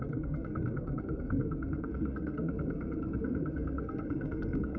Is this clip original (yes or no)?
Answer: no